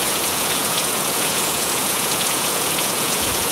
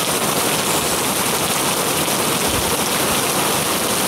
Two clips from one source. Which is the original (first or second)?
second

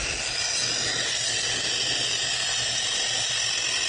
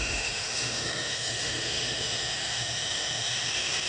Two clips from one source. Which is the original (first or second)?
first